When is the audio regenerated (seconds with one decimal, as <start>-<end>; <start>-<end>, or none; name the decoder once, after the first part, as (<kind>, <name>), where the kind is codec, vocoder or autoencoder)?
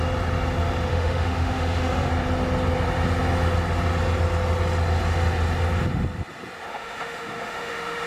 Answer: 0.9-2.1 (autoencoder, DAC-VAE); 6.7-8.1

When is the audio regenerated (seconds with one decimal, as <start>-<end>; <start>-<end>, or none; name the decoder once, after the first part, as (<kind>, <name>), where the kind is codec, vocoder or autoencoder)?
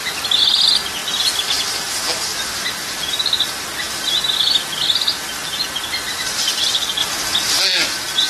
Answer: 1.0-1.7 (vocoder, BigVGAN v2); 7.0-7.6